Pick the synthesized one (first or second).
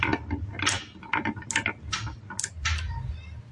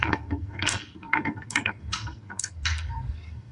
second